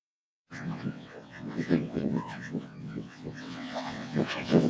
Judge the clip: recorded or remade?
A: remade